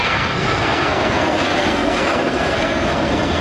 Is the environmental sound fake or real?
fake